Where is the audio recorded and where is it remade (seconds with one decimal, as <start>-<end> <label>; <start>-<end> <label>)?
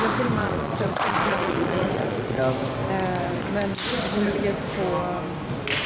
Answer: 0.0-0.4 recorded; 0.4-2.4 remade; 2.4-5.9 recorded